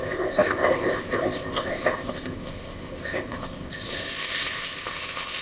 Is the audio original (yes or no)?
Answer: no